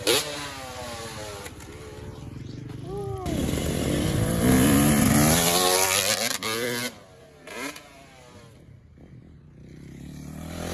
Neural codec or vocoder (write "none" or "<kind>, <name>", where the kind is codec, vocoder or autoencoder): none